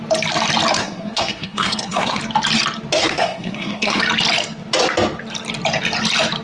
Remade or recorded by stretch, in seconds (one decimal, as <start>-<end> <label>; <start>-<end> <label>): 0.0-0.8 recorded; 0.8-2.2 remade; 2.2-3.0 recorded; 3.0-4.0 remade; 4.0-6.4 recorded